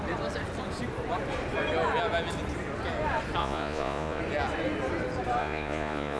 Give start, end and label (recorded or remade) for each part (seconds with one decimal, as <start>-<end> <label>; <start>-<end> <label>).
0.0-3.4 recorded; 3.4-4.2 remade; 4.2-5.4 recorded; 5.4-6.2 remade